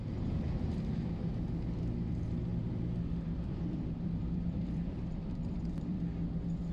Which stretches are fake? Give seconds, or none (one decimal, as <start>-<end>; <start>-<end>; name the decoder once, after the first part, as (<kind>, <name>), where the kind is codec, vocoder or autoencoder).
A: 2.5-6.0 (vocoder, BigVGAN v2)